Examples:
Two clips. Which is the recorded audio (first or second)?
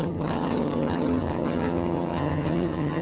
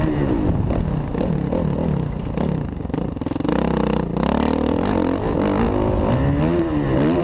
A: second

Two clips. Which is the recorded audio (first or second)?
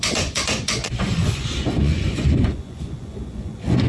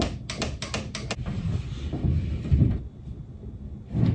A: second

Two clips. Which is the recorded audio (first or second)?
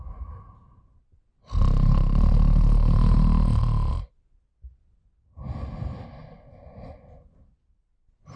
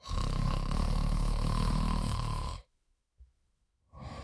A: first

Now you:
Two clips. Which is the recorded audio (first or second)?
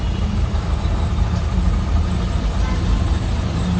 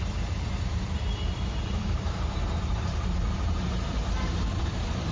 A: first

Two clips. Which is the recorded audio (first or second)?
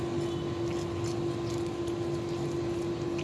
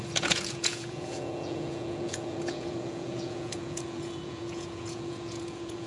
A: first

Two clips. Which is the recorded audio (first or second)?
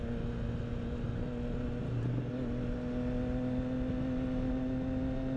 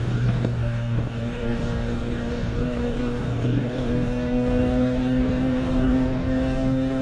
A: first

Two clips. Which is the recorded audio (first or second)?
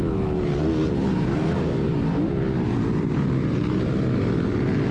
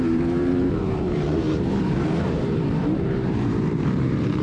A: first